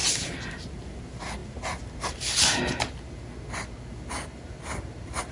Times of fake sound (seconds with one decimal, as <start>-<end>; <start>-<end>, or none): none